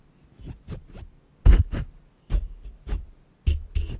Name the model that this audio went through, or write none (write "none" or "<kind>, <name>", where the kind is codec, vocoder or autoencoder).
none